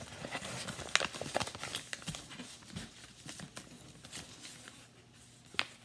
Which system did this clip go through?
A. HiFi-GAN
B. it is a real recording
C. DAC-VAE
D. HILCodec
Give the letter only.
B